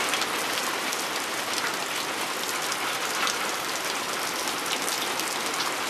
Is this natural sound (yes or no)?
yes